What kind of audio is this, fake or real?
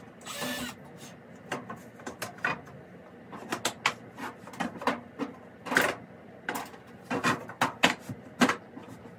real